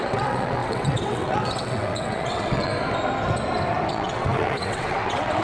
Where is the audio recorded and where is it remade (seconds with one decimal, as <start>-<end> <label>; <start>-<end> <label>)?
0.0-2.7 remade; 2.7-3.9 recorded; 3.9-5.4 remade

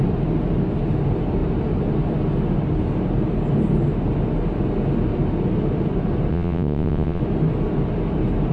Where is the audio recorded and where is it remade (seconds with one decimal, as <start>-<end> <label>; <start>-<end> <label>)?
0.0-6.3 recorded; 6.3-7.2 remade; 7.2-8.5 recorded

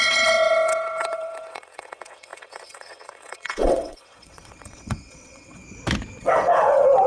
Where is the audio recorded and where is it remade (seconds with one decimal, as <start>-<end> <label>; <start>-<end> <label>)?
0.0-5.6 remade; 5.6-6.2 recorded; 6.2-7.1 remade